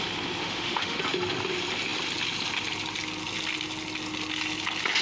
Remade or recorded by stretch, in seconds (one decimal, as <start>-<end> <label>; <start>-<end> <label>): 0.0-0.4 recorded; 0.4-1.0 remade; 1.0-5.0 recorded